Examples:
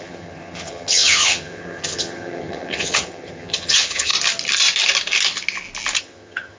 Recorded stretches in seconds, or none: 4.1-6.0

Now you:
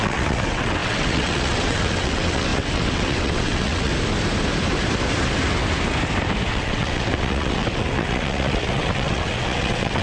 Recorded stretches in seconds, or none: 3.9-6.5

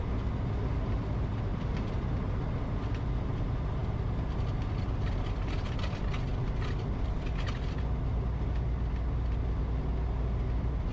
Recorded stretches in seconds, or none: 0.0-10.9

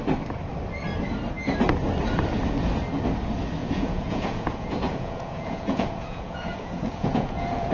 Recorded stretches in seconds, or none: 0.0-3.6

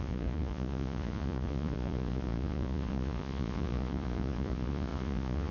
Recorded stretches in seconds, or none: none

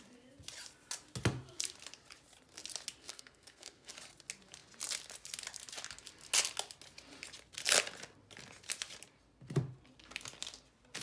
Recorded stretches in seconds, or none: 0.0-3.0; 3.9-11.0

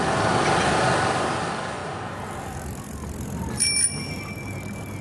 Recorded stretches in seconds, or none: 0.0-5.0